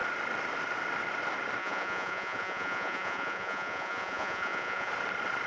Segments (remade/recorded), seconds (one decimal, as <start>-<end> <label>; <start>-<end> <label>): 0.0-1.6 recorded; 1.6-4.9 remade; 4.9-5.5 recorded